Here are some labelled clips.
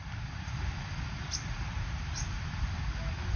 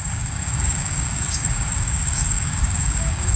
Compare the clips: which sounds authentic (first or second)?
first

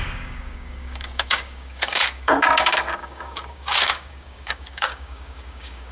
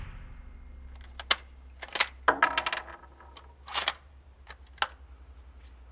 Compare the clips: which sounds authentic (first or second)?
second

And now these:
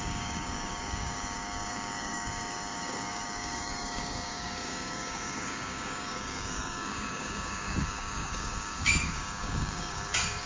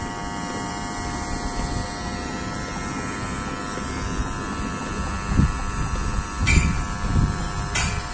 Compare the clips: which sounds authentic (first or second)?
second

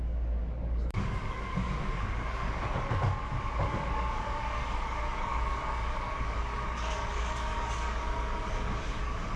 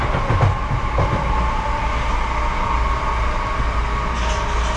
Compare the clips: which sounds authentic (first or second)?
second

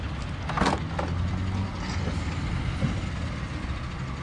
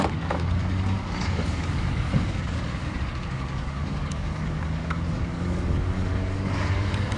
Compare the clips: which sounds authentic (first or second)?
first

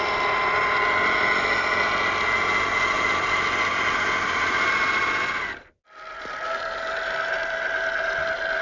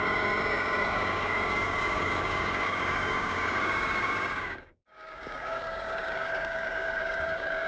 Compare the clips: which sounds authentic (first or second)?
first